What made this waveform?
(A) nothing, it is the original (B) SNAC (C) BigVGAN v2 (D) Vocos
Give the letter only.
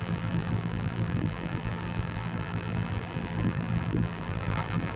C